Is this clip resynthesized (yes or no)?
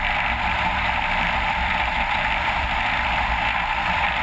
yes